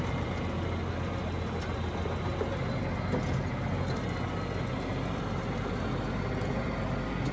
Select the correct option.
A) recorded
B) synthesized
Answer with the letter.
A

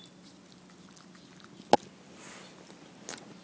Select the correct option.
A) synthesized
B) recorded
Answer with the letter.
B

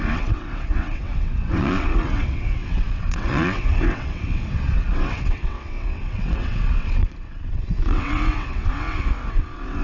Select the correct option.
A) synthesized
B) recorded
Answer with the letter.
A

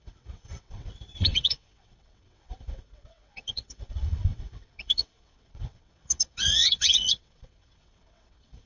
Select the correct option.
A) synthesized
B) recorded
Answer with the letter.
A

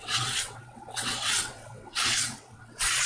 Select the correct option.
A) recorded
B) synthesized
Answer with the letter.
B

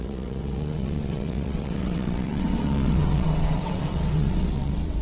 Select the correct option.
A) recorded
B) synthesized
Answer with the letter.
B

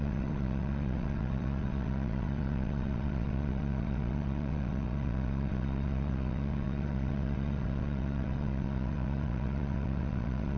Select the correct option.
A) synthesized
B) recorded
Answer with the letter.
A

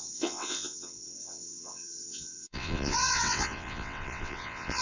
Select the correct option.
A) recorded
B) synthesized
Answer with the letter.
B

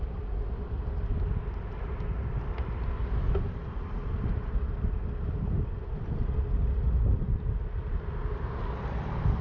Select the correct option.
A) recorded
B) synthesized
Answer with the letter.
A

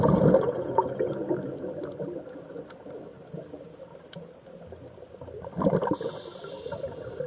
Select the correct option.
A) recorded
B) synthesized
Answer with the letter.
A